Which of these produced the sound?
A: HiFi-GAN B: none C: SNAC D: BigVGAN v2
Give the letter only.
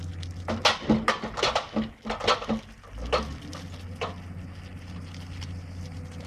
B